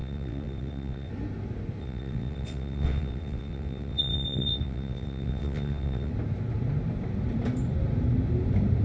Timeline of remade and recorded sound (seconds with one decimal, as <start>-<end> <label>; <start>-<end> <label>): 0.0-1.1 remade; 1.1-1.8 recorded; 1.8-6.1 remade; 6.1-8.8 recorded